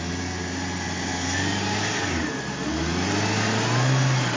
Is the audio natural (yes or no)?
yes